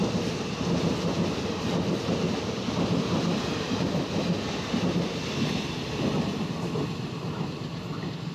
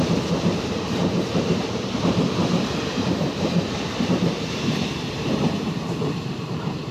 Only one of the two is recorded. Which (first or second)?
first